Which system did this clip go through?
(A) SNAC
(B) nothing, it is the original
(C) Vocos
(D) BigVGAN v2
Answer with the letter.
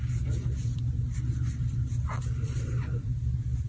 B